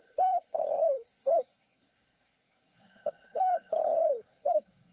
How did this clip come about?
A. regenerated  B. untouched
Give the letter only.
A